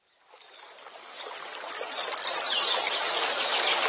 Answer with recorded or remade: remade